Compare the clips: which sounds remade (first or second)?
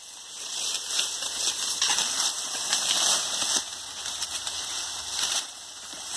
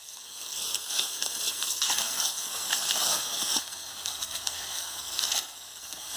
second